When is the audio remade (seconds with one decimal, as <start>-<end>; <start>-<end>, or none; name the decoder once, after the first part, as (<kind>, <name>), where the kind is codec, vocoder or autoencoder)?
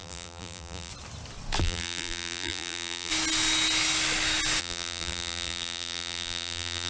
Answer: 0.0-0.9 (vocoder, BigVGAN v2); 1.6-3.1; 4.6-6.9